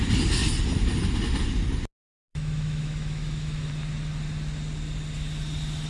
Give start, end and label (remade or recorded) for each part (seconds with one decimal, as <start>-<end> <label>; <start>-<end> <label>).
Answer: 0.0-2.3 recorded; 2.3-3.7 remade; 3.7-5.9 recorded